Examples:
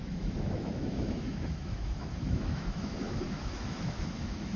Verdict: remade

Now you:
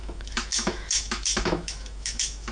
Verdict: remade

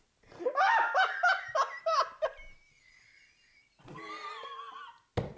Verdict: recorded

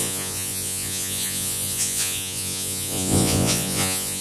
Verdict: remade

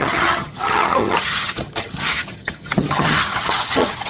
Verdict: remade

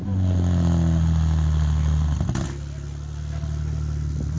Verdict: recorded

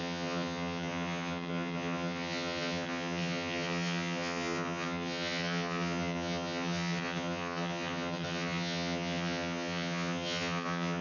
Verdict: remade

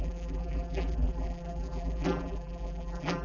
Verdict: remade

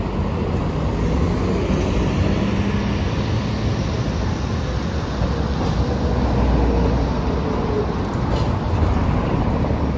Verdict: recorded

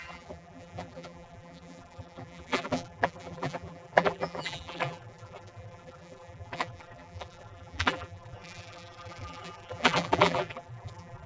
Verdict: remade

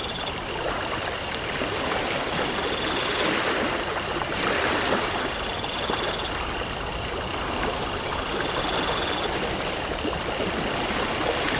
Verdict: recorded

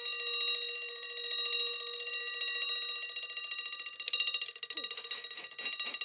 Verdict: recorded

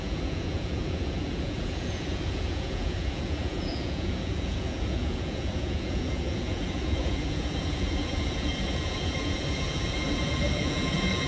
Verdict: remade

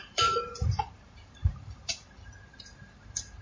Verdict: remade